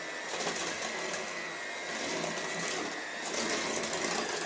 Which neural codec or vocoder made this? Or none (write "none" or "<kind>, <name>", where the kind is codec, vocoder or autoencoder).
none